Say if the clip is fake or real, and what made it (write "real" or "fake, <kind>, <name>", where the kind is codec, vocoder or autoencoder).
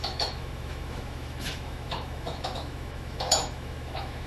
fake, autoencoder, DAC-VAE